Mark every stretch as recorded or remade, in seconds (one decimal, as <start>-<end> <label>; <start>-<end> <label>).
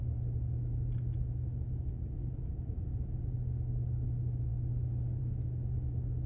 0.0-6.3 recorded